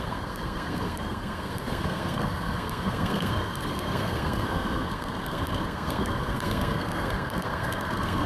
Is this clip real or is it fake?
fake